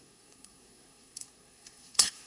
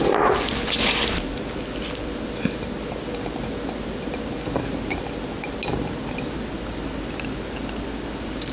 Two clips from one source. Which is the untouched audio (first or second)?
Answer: second